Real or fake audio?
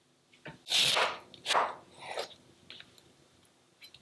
real